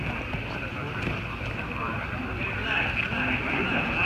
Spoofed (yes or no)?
no